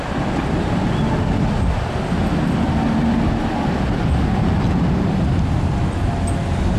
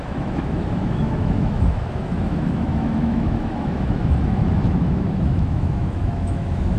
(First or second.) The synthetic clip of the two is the second